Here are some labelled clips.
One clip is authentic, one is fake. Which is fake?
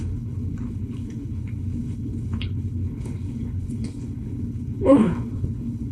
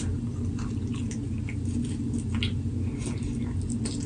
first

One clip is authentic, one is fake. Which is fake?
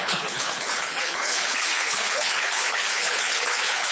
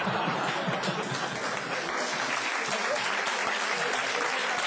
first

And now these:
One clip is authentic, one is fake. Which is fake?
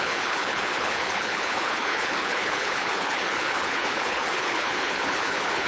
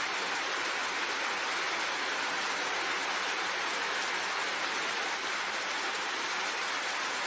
first